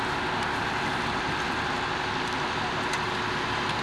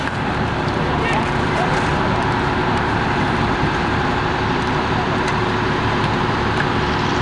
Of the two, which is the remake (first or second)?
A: second